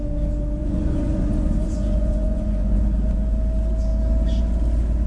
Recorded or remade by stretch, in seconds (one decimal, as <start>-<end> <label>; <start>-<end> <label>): 0.0-0.6 recorded; 0.6-2.8 remade; 2.8-5.1 recorded